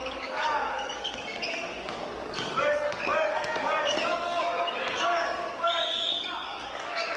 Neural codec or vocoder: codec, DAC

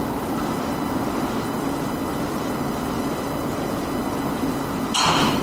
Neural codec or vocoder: none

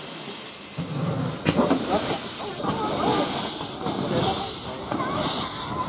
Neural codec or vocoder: none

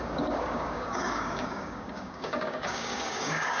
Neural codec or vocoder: codec, DAC